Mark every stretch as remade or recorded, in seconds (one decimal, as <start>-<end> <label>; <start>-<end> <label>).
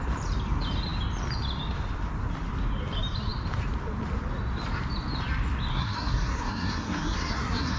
0.0-5.7 recorded; 5.7-7.8 remade